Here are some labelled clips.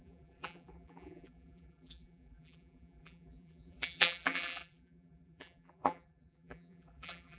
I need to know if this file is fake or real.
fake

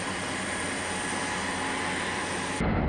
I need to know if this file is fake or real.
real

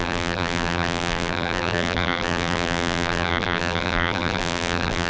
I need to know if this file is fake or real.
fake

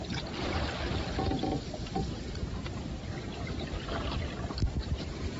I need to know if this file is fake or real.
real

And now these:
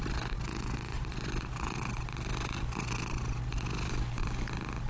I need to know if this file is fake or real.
real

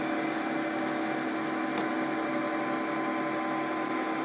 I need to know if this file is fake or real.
real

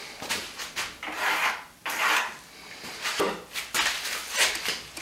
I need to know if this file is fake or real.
real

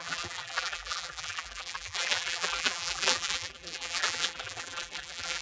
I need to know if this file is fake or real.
fake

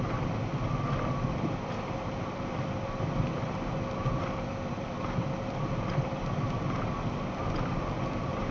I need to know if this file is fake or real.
fake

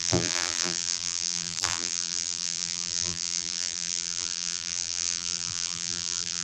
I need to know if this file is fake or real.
fake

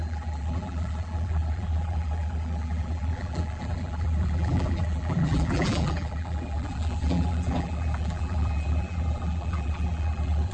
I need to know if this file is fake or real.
fake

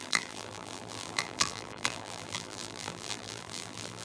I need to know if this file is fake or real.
fake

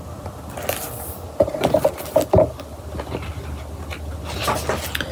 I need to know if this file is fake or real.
real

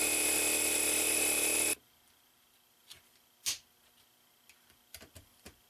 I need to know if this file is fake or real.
real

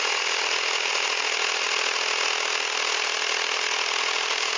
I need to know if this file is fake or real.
real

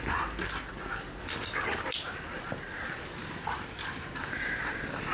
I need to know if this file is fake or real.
real